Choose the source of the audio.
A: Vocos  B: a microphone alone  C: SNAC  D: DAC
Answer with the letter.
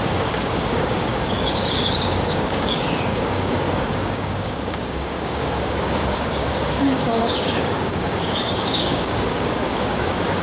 D